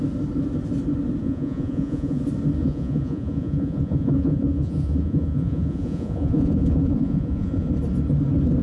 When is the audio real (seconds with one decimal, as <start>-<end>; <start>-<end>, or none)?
0.0-1.2; 2.2-2.6; 7.7-8.6